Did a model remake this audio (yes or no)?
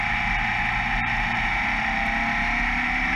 no